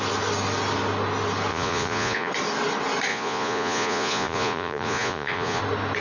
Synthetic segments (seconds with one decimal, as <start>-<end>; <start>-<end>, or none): 1.5-2.3; 3.1-5.6